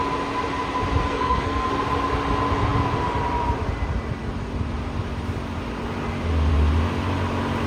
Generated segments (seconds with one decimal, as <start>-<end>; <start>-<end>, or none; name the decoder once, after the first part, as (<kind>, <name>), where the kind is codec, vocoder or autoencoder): 1.0-1.7 (codec, SNAC)